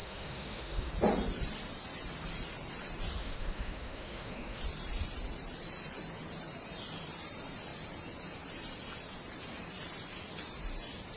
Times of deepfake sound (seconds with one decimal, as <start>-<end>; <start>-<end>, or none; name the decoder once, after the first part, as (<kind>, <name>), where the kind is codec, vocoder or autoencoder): 0.0-0.9 (autoencoder, DAC-VAE); 3.2-4.6